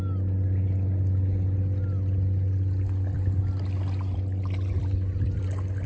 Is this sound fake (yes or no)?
no